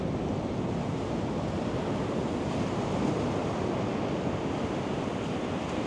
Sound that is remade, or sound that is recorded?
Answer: recorded